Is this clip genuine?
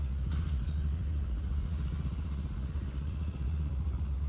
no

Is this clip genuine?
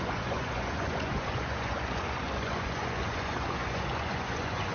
no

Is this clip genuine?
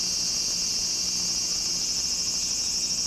yes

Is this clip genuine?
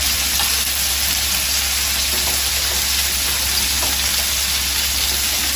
yes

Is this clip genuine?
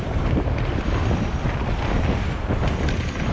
yes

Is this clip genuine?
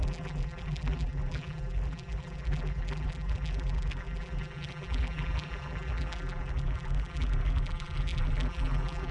no